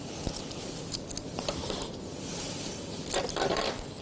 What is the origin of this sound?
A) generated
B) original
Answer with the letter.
B